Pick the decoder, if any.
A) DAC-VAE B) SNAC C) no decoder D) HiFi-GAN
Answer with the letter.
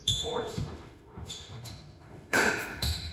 A